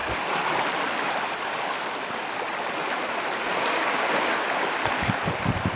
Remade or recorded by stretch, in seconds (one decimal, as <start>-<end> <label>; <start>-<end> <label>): 0.0-5.8 recorded